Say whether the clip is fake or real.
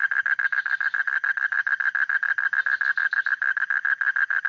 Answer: real